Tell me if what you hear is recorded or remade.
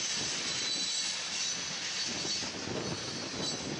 recorded